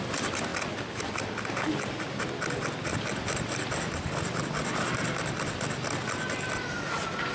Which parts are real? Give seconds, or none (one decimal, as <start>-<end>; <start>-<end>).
0.0-7.3